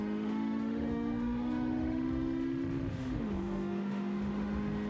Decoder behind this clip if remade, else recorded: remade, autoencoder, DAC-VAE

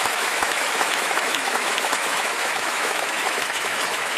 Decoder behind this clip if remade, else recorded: remade, autoencoder, DAC-VAE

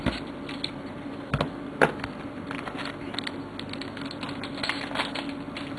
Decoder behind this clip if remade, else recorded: recorded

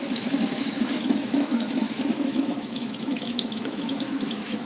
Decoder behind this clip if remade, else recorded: remade, autoencoder, DAC-VAE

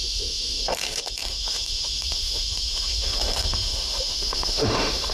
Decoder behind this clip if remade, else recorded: remade, autoencoder, DAC-VAE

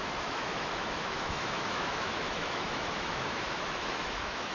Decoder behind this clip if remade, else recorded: remade, autoencoder, DAC-VAE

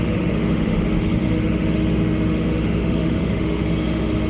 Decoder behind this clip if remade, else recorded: remade, autoencoder, DAC-VAE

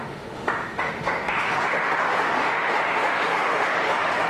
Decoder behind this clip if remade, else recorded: remade, autoencoder, DAC-VAE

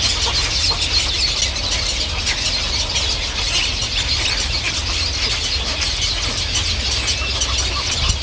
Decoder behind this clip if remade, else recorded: recorded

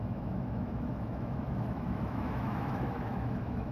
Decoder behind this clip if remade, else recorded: remade, autoencoder, DAC-VAE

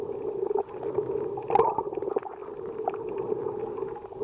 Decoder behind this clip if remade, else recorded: recorded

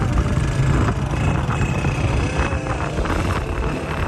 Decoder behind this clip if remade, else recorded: recorded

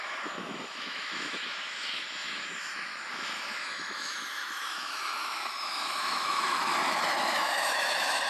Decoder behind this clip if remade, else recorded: remade, autoencoder, DAC-VAE